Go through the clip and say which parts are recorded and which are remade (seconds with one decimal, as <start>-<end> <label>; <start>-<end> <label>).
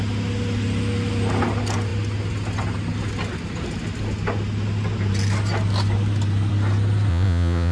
0.0-7.1 recorded; 7.1-7.7 remade